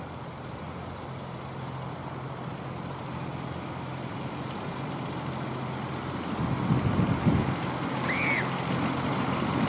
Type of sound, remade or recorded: recorded